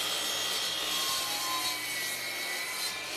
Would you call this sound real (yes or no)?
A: yes